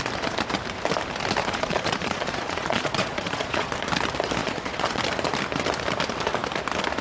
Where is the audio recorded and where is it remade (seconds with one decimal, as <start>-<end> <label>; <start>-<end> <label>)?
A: 0.0-1.4 recorded; 1.4-3.7 remade; 3.7-4.4 recorded; 4.4-5.0 remade; 5.0-7.0 recorded